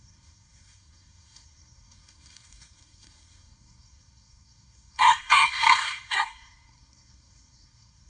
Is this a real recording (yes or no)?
no